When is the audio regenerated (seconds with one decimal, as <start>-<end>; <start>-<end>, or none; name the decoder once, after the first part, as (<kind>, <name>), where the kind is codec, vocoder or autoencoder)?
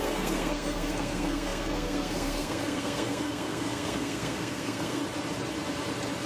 0.0-5.0 (codec, SNAC)